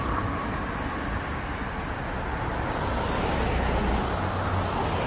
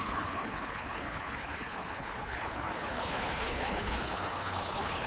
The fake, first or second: second